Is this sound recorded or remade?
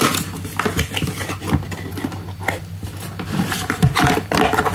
recorded